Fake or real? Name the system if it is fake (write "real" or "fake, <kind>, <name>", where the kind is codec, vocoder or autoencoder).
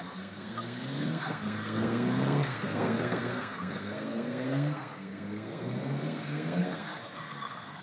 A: fake, codec, SNAC